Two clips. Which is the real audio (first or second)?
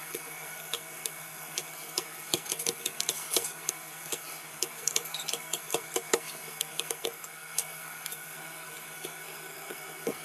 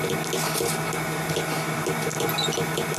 second